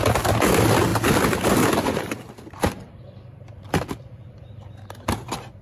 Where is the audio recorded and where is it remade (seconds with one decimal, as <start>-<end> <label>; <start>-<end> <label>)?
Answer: 0.0-0.9 recorded; 0.9-4.3 remade; 4.3-5.6 recorded